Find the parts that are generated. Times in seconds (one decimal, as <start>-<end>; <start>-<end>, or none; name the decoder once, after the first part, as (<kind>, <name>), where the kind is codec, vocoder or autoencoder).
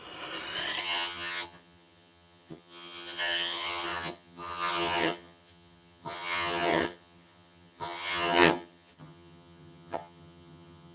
0.8-10.9 (vocoder, HiFi-GAN)